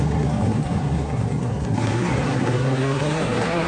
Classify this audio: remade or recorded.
remade